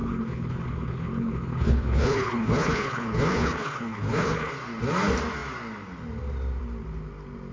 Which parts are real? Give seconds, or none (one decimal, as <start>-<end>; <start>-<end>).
4.5-7.5